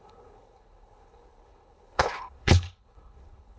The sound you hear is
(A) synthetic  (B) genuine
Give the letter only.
A